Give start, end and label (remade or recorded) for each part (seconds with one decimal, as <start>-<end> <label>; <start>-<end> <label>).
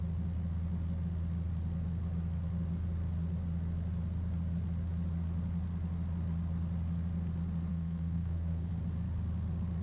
0.0-7.7 recorded; 7.7-8.7 remade; 8.7-9.8 recorded